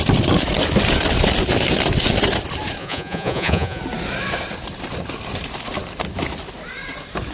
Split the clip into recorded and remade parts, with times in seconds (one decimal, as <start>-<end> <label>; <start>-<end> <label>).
0.0-2.8 recorded; 2.8-3.8 remade; 3.8-7.3 recorded